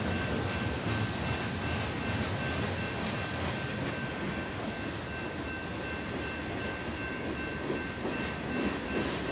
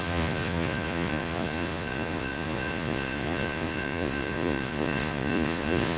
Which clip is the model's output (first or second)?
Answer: second